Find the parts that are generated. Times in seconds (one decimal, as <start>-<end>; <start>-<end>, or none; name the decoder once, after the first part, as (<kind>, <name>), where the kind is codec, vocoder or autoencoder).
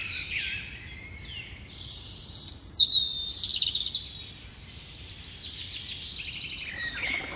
3.5-4.2 (vocoder, BigVGAN v2)